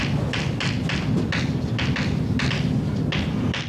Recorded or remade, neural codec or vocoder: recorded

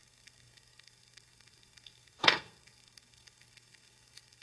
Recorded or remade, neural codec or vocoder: remade, codec, SNAC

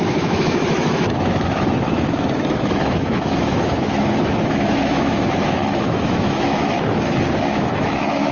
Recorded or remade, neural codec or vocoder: remade, autoencoder, DAC-VAE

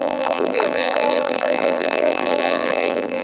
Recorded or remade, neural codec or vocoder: remade, vocoder, BigVGAN v2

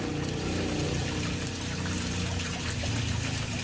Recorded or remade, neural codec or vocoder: recorded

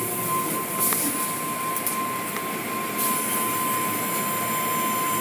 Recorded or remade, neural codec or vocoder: recorded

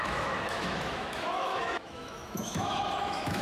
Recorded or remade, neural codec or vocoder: remade, autoencoder, DAC-VAE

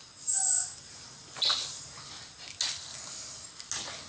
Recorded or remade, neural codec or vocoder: recorded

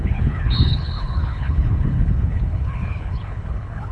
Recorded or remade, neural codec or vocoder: remade, codec, HILCodec